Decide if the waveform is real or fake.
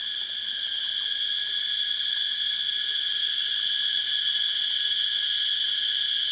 real